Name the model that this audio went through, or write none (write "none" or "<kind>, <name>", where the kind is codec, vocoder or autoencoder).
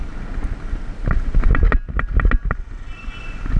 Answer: none